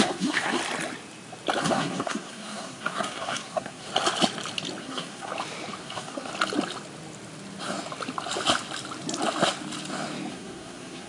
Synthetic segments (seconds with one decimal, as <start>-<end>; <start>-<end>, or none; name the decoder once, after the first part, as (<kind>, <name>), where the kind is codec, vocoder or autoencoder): 0.0-0.6 (codec, SNAC); 1.6-3.9; 4.8-5.3; 5.8-6.3; 10.3-11.1